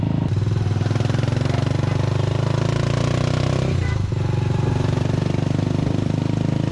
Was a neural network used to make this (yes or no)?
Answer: no